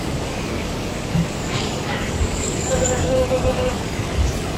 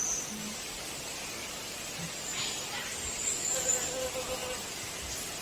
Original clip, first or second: second